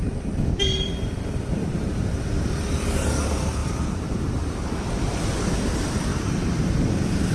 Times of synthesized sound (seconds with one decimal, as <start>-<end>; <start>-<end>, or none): 1.6-2.2; 3.6-4.7; 6.1-6.8